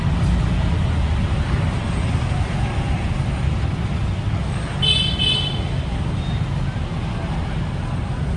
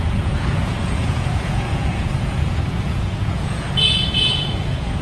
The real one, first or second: first